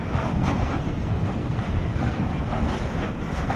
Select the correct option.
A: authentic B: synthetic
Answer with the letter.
B